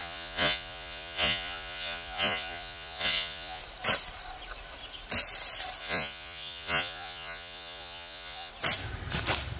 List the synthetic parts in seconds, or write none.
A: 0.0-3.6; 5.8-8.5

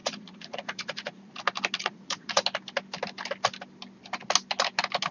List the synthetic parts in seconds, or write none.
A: 0.0-1.3; 1.8-2.4

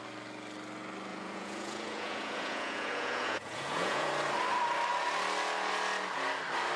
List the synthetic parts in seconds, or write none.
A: 1.1-4.1

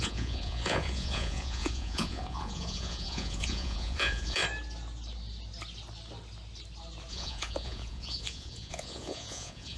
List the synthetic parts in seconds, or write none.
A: 0.0-4.4; 7.1-9.8